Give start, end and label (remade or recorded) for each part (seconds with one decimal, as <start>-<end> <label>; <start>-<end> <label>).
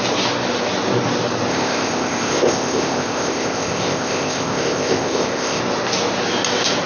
0.0-1.5 recorded; 1.5-5.6 remade; 5.6-6.9 recorded